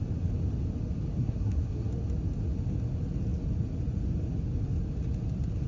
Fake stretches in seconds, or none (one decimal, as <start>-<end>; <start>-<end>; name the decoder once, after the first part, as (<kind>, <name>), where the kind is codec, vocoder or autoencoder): 1.2-1.9 (codec, SNAC)